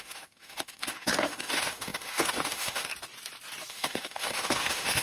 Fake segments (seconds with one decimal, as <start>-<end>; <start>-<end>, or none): 0.0-2.9; 3.7-5.0